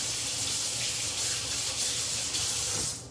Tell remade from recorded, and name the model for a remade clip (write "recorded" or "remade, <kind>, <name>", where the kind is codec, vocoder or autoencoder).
recorded